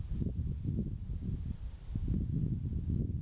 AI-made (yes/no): no